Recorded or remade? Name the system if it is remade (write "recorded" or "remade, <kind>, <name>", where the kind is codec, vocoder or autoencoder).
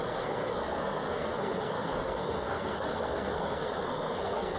remade, codec, SNAC